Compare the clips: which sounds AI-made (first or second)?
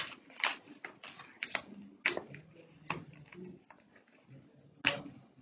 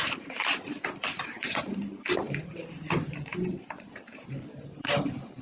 second